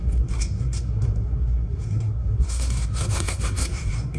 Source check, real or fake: fake